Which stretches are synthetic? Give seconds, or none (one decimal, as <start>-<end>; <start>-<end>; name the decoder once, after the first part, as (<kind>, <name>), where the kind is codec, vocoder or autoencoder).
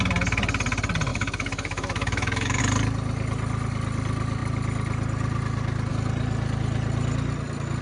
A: 1.1-2.6 (autoencoder, DAC-VAE)